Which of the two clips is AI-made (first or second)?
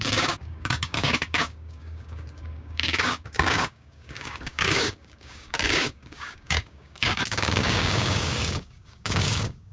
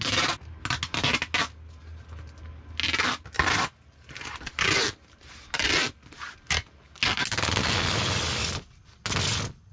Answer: first